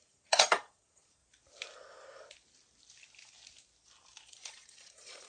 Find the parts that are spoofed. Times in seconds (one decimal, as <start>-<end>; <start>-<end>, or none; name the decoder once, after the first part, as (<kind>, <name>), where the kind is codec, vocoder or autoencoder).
0.0-1.2 (vocoder, Vocos); 4.3-5.3